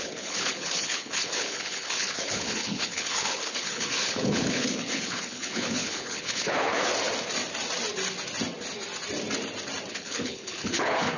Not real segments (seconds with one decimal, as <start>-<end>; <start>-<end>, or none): 0.0-6.9; 9.9-11.2